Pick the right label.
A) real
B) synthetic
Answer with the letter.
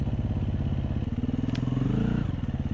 A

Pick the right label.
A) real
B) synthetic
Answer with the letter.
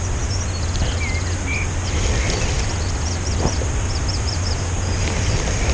A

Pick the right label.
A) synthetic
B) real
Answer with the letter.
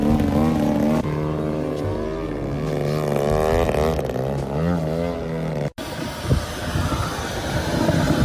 B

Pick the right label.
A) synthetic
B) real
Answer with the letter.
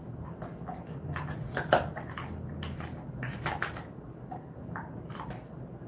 B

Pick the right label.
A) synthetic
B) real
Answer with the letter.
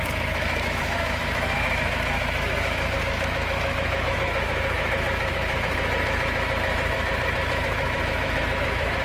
A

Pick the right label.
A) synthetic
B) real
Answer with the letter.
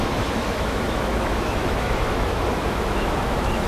A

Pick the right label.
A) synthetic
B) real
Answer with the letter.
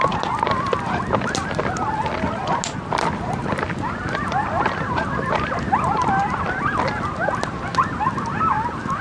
B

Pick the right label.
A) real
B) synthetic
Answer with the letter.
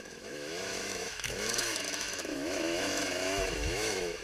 B